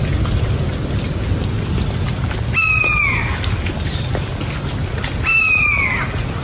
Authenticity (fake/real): real